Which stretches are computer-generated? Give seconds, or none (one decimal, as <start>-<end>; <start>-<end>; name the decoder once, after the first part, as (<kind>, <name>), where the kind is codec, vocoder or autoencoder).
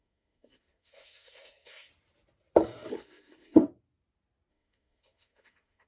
0.0-1.9 (codec, SNAC); 2.9-3.6; 4.5-5.9